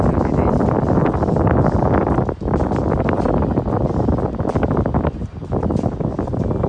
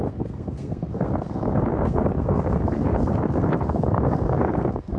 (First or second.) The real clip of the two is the first